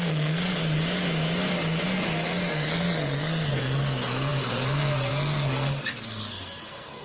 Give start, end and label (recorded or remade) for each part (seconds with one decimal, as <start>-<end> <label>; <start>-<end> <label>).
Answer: 0.0-0.5 remade; 0.5-2.5 recorded; 2.5-7.0 remade